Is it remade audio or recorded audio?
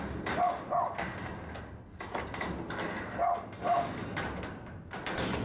recorded